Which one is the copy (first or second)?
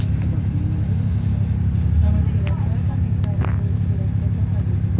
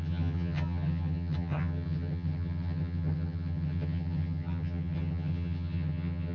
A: second